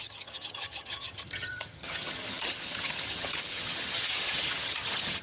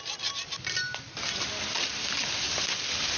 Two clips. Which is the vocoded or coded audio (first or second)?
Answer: first